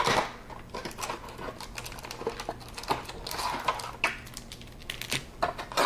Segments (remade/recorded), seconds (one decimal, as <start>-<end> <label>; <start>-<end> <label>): 0.0-5.9 recorded